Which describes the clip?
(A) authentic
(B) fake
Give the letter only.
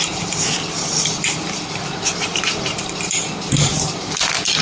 B